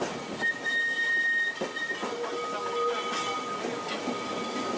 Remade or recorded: recorded